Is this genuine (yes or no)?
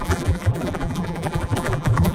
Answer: no